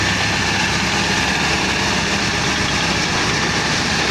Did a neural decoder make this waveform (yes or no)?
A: no